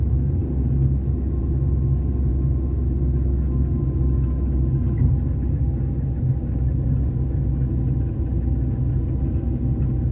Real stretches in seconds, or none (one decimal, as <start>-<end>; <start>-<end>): 0.0-10.1

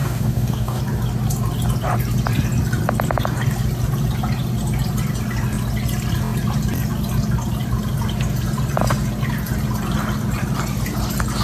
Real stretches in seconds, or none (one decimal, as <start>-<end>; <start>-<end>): 0.8-11.4

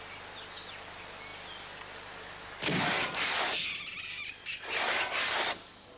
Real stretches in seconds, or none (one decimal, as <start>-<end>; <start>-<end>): 0.0-6.0

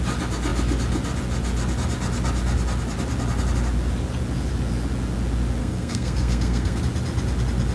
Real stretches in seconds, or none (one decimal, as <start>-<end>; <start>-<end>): 0.0-5.6; 6.8-7.7